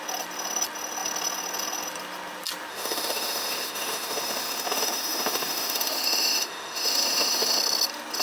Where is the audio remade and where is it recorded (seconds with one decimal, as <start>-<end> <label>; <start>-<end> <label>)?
0.0-2.7 recorded; 2.7-7.6 remade; 7.6-8.2 recorded